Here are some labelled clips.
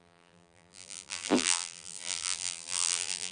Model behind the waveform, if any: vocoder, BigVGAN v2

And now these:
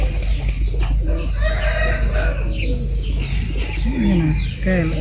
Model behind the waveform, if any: none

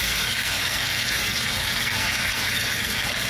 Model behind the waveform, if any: codec, SNAC